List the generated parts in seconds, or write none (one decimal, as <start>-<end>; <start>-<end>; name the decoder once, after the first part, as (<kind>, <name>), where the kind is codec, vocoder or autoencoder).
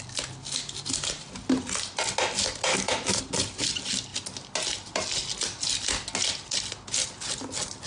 2.7-3.2 (autoencoder, DAC-VAE)